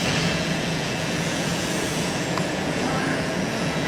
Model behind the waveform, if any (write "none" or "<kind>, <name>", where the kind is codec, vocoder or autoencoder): vocoder, Vocos